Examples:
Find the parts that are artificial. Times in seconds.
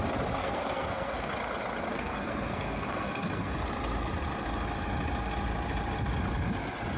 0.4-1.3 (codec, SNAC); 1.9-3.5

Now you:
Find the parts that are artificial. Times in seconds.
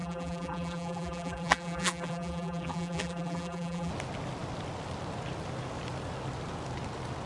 0.0-3.9 (vocoder, BigVGAN v2)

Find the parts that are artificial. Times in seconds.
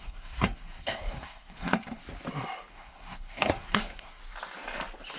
0.0-2.0 (codec, SNAC); 2.7-4.2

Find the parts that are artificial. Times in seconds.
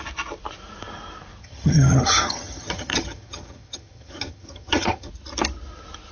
1.4-5.1 (vocoder, HiFi-GAN)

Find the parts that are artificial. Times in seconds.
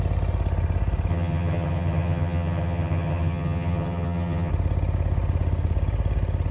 1.1-4.5 (vocoder, HiFi-GAN)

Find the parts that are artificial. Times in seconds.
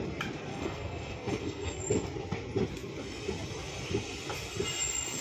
0.5-1.8 (codec, SNAC)